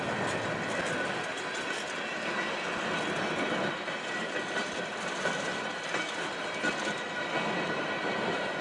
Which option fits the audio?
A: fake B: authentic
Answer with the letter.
B